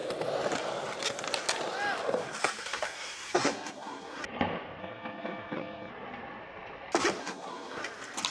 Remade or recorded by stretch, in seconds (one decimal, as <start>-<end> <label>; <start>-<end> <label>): 0.0-2.4 recorded; 2.4-4.2 remade; 4.2-4.8 recorded; 4.8-5.9 remade; 5.9-7.2 recorded; 7.2-7.8 remade; 7.8-8.3 recorded

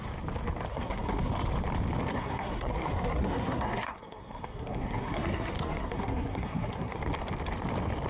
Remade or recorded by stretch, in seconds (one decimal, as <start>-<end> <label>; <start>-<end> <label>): 0.0-0.7 recorded; 0.7-1.3 remade; 1.3-2.1 recorded; 2.1-7.0 remade; 7.0-8.1 recorded